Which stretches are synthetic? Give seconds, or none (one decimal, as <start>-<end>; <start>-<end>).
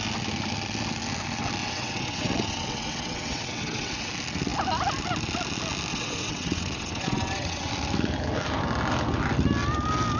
1.6-4.1; 5.9-7.7